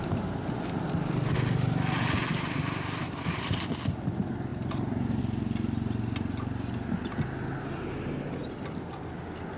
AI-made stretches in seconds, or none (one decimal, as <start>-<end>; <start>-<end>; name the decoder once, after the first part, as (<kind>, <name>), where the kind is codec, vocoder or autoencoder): 2.3-3.4 (vocoder, BigVGAN v2); 4.5-5.2